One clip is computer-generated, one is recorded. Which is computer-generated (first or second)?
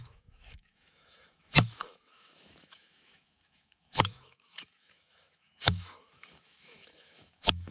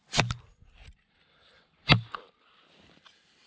first